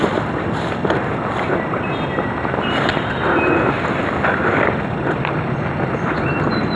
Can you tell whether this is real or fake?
real